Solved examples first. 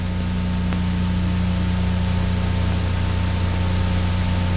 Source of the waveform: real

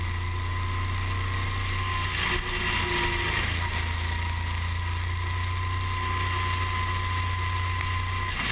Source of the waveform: real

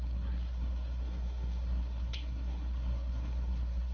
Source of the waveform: fake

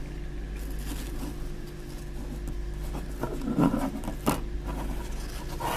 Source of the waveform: real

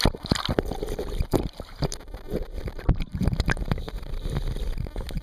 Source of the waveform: real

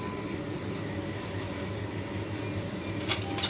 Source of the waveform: real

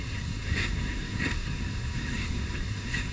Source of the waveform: fake